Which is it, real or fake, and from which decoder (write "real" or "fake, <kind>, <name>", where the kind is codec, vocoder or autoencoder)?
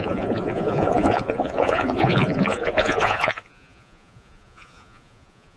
fake, vocoder, Vocos